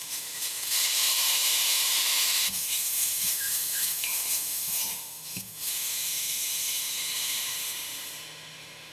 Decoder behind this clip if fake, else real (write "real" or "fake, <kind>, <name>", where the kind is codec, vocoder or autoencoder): fake, autoencoder, DAC-VAE